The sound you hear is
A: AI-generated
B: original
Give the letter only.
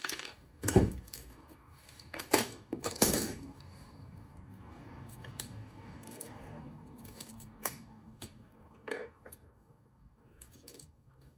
A